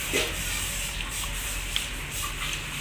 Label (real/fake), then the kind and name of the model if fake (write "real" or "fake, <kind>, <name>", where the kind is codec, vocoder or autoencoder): real